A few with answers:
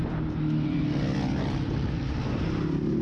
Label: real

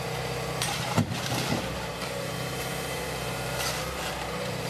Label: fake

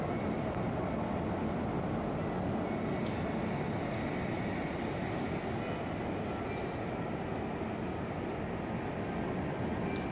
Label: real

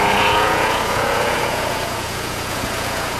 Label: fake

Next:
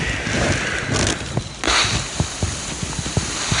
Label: real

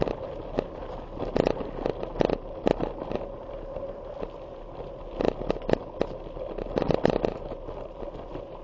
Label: real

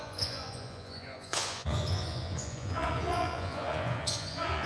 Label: fake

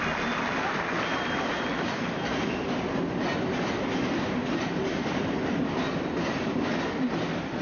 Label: real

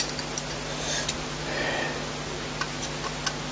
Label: real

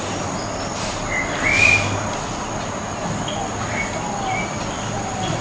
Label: real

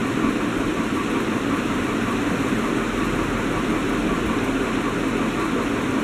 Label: real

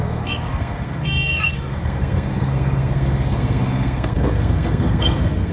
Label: fake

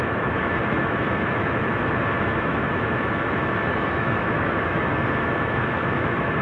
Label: fake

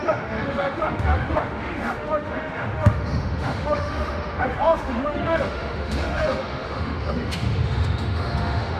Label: fake